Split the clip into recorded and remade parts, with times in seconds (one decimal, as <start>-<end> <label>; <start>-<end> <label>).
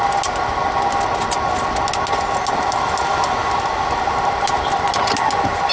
0.0-5.7 recorded